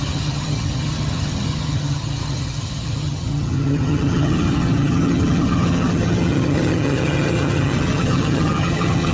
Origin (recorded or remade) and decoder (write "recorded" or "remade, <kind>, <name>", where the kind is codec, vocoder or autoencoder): remade, vocoder, HiFi-GAN